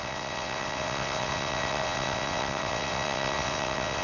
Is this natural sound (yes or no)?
no